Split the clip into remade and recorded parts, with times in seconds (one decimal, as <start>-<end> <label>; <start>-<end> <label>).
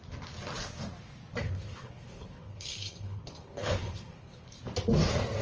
0.0-1.4 recorded; 1.4-4.6 remade; 4.6-5.4 recorded